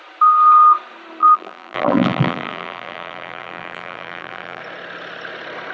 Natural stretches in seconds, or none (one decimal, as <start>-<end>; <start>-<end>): 0.0-1.2; 4.6-5.7